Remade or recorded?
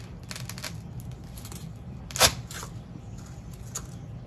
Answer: recorded